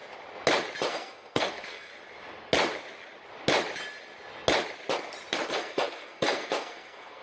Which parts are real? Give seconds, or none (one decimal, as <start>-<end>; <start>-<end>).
0.0-0.9; 1.9-5.5

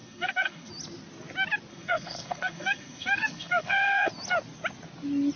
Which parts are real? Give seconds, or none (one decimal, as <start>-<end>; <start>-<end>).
0.7-1.7; 4.1-5.4

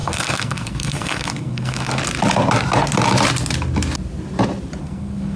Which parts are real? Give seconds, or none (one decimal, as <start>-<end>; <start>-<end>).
2.0-4.8